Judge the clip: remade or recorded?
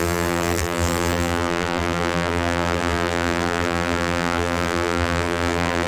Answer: remade